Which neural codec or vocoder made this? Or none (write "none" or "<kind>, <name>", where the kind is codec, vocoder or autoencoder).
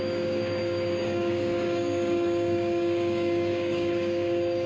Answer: codec, DAC